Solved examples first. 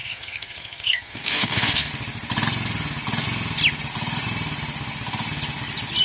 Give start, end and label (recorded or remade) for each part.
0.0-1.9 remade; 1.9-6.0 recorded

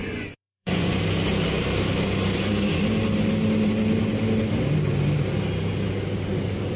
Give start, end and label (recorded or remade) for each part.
0.0-1.0 remade; 1.0-6.8 recorded

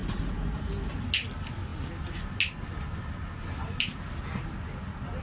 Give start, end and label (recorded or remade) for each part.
0.0-0.6 remade; 0.6-5.2 recorded

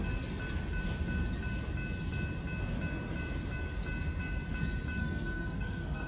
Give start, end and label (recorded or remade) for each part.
0.0-5.0 recorded; 5.0-6.1 remade